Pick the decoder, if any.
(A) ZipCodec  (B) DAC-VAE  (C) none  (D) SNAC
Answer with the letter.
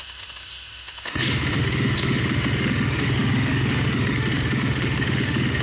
B